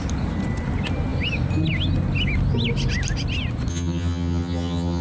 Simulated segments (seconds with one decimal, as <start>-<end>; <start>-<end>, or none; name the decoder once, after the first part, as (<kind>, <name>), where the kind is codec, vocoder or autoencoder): 3.7-5.0 (vocoder, HiFi-GAN)